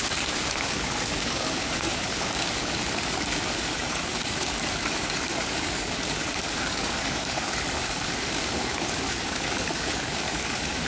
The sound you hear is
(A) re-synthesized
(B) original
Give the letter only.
A